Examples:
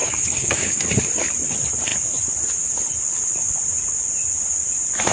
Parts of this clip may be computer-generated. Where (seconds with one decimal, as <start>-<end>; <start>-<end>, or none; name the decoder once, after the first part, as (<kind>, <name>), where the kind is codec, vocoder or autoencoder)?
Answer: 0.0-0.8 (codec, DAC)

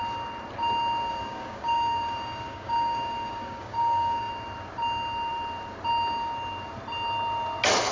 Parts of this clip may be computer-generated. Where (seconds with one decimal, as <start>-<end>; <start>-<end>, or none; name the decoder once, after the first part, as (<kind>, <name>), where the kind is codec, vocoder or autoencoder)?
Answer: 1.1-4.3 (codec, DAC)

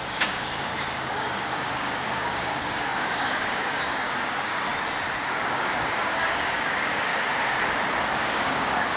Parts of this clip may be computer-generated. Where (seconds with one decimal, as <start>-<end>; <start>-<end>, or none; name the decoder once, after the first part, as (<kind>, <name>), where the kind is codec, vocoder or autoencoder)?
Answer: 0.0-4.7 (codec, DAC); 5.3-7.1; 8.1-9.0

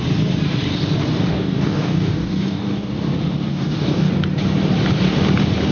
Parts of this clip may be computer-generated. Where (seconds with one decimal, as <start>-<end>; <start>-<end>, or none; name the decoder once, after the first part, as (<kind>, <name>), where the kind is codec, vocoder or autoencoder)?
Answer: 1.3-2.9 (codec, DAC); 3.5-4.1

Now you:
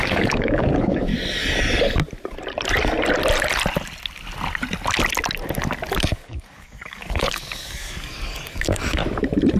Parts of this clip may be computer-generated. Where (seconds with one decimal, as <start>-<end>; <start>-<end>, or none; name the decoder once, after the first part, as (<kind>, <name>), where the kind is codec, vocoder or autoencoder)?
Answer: 0.0-1.1 (codec, DAC); 6.1-9.0